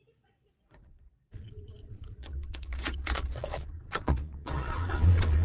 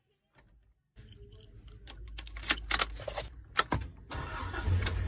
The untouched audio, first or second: second